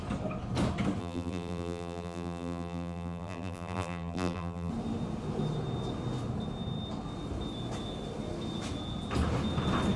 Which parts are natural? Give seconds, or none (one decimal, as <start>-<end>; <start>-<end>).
0.0-1.0; 4.7-10.0